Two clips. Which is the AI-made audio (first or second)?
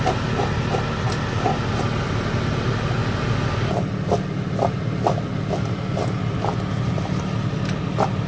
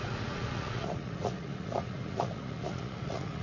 second